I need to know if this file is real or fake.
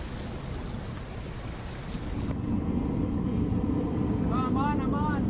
real